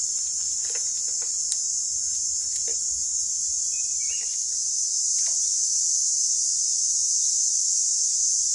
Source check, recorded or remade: recorded